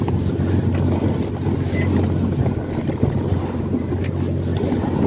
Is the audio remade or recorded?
recorded